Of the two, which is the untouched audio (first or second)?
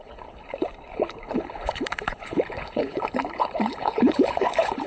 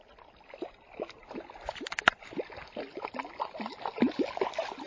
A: second